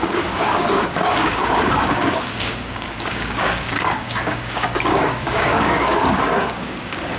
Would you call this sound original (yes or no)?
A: no